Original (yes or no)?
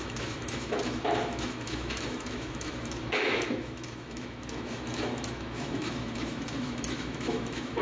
no